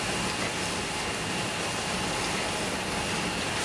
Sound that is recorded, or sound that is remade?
recorded